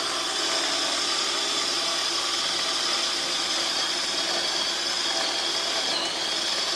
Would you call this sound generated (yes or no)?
no